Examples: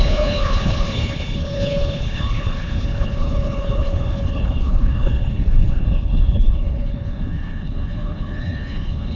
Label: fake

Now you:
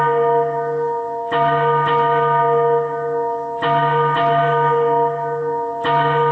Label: real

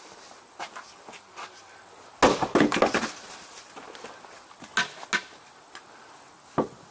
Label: real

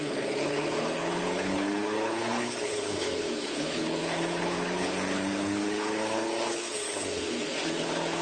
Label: fake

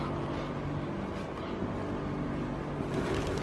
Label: real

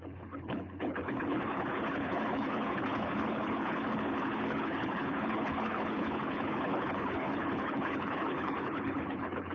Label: fake